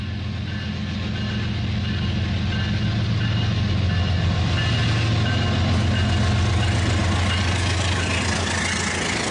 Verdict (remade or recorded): recorded